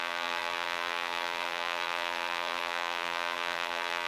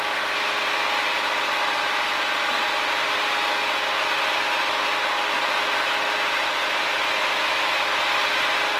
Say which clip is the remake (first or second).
first